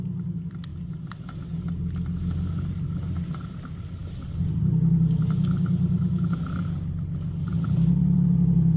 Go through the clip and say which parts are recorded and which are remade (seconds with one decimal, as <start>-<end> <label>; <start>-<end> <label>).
0.0-8.8 recorded